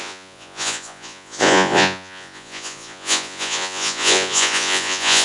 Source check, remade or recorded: remade